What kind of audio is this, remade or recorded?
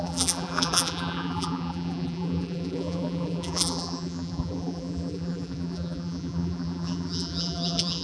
remade